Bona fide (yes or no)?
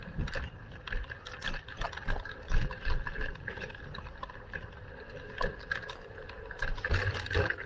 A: yes